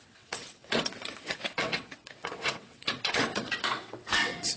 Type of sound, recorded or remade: remade